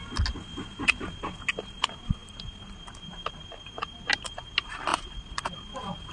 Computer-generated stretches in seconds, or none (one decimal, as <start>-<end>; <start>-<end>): 4.9-5.4